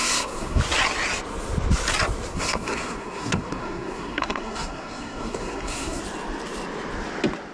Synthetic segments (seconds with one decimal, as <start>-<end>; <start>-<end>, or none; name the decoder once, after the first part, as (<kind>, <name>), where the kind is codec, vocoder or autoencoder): 0.0-0.6 (codec, SNAC); 2.3-6.0